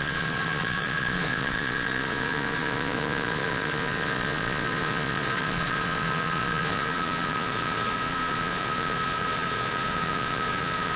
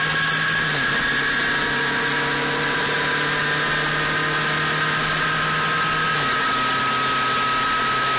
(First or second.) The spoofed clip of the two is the first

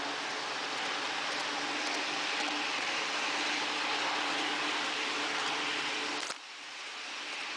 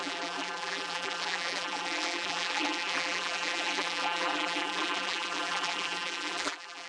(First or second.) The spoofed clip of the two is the second